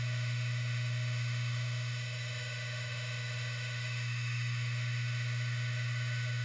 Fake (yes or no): yes